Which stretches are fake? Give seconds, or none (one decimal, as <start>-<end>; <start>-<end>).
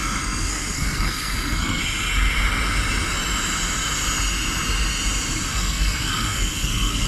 0.0-1.8; 5.5-7.1